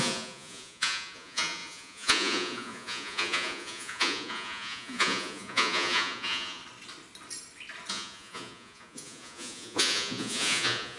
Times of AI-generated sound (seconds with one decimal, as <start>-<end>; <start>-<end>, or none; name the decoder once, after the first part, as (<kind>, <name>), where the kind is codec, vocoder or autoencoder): 0.0-6.6 (vocoder, Vocos); 7.9-11.0